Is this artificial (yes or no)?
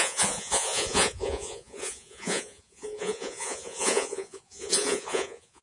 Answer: yes